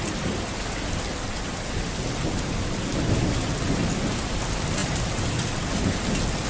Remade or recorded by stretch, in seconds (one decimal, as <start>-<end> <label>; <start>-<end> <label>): 0.0-6.5 recorded